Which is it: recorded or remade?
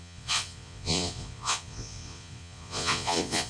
remade